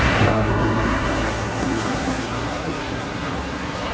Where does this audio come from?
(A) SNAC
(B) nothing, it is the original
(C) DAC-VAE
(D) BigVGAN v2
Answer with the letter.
A